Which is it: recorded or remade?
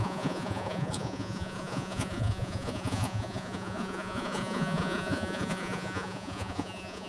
remade